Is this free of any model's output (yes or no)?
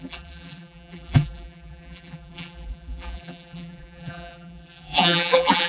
no